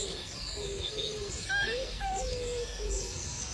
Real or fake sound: fake